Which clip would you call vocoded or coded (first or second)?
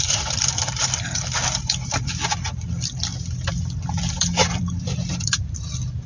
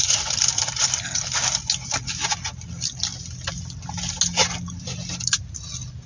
first